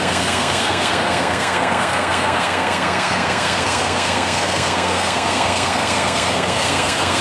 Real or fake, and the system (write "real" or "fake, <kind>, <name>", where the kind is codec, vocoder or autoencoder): fake, codec, SNAC